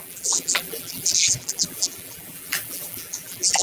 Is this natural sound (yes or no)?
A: no